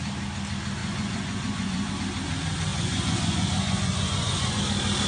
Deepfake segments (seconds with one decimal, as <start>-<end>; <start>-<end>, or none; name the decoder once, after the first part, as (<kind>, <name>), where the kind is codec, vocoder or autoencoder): 0.8-1.9 (vocoder, Vocos); 2.7-4.6